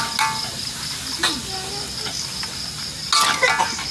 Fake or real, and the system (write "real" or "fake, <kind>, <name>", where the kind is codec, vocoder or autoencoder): real